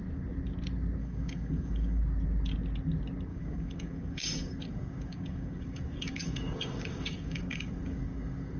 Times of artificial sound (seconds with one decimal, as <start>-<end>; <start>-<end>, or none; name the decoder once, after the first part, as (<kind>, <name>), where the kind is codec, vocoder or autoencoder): 1.0-2.0 (codec, DAC); 3.3-8.6